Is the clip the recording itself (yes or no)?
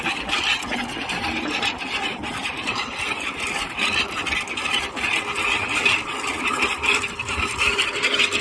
yes